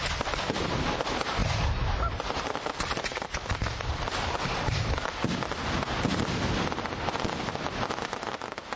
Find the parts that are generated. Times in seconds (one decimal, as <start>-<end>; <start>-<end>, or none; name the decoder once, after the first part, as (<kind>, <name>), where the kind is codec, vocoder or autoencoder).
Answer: 1.4-5.1 (vocoder, BigVGAN v2)